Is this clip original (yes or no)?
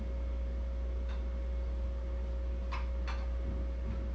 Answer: yes